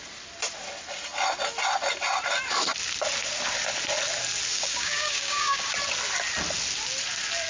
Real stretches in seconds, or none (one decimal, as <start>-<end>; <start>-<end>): 0.0-4.5; 5.7-7.5